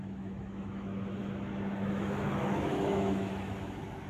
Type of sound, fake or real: fake